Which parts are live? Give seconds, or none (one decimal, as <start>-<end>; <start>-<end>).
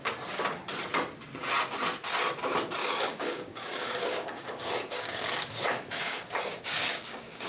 0.0-2.8